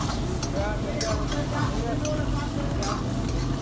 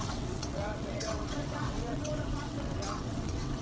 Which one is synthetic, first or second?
second